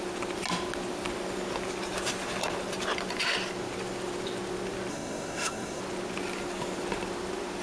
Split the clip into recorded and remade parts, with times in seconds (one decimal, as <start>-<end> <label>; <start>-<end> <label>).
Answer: 0.0-4.9 recorded; 4.9-5.8 remade; 5.8-7.6 recorded

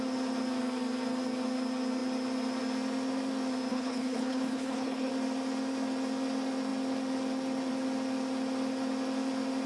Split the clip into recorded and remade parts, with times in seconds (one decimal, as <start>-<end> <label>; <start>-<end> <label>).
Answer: 0.0-3.7 recorded; 3.7-5.1 remade; 5.1-9.7 recorded

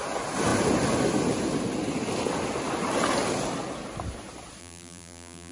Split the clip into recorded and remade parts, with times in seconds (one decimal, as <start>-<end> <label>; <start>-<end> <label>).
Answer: 0.0-4.6 recorded; 4.6-5.5 remade

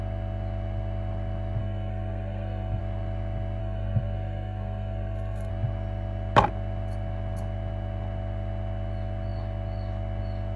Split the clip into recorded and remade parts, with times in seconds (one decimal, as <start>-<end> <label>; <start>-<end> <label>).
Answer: 0.0-1.6 recorded; 1.6-2.8 remade; 2.8-3.6 recorded; 3.6-5.5 remade; 5.5-10.6 recorded

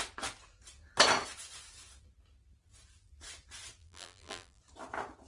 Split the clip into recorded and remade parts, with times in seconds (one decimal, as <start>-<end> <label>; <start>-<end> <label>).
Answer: 0.0-3.8 recorded; 3.8-4.6 remade; 4.6-5.3 recorded

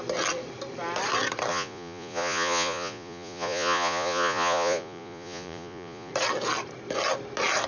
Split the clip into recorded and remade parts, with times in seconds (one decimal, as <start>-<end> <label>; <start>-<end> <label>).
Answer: 0.0-1.5 recorded; 1.5-6.1 remade; 6.1-7.7 recorded